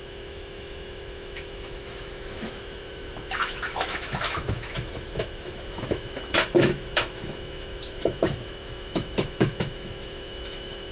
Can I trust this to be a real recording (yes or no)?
no